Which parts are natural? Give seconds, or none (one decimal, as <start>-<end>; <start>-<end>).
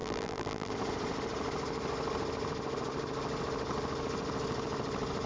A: 0.7-5.3